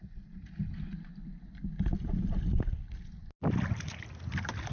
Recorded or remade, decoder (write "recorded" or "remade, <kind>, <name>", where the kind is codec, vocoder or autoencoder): recorded